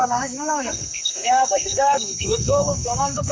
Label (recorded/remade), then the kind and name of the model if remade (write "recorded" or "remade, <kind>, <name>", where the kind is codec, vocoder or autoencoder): remade, codec, SNAC